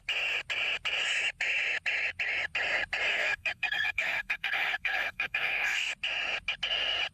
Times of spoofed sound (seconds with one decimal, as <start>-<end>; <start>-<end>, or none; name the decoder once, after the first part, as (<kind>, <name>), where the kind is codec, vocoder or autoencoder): 3.1-5.9 (codec, SNAC)